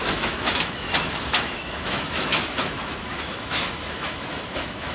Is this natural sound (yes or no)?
no